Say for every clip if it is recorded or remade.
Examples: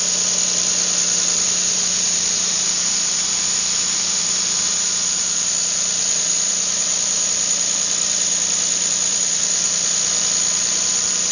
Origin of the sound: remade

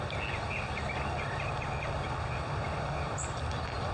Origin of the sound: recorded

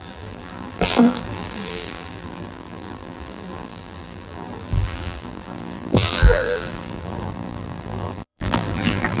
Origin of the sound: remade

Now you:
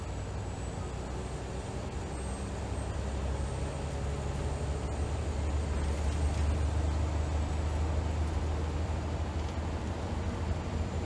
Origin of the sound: recorded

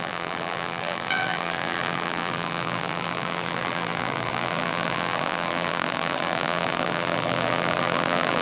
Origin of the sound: remade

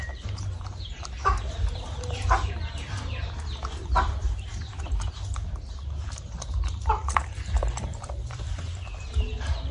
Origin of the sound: remade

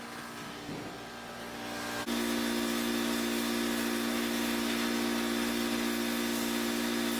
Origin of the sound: recorded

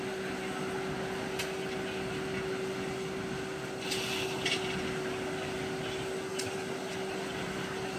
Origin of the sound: recorded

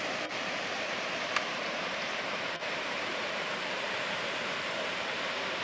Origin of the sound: remade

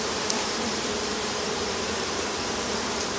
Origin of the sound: remade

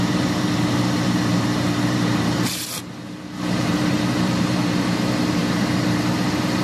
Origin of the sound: remade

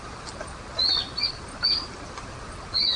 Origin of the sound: recorded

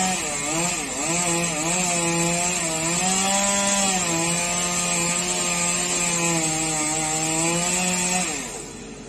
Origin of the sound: recorded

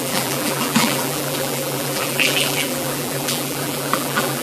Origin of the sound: remade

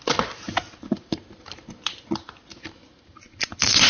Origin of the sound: recorded